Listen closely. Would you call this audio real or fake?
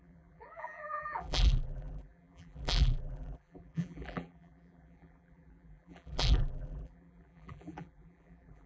fake